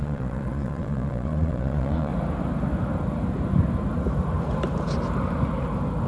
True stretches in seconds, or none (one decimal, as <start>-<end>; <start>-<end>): 2.1-6.1